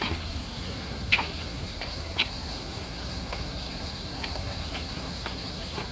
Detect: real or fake fake